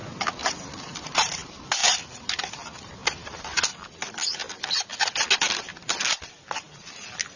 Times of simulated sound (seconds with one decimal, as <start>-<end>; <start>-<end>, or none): none